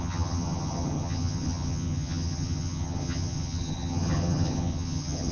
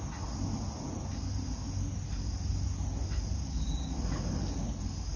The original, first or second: second